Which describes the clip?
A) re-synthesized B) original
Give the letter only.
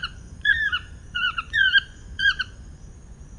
A